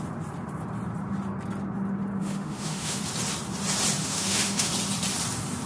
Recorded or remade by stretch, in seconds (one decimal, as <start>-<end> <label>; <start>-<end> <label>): 0.0-2.2 recorded; 2.2-3.0 remade; 3.0-4.0 recorded; 4.0-4.7 remade; 4.7-5.7 recorded